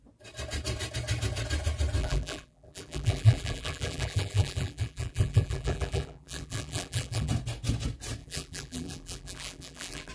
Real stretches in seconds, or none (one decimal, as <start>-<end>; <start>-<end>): 0.0-2.0; 7.3-8.2